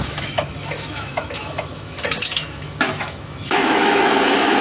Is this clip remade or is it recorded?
remade